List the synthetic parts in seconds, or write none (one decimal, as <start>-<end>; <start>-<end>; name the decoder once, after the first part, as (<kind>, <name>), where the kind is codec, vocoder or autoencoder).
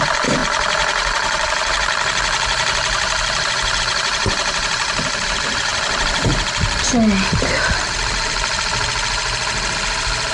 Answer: 0.0-5.7 (vocoder, BigVGAN v2)